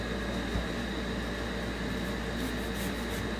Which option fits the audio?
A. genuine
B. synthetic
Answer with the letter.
A